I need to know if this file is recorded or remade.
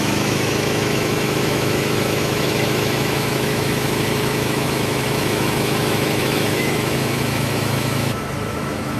remade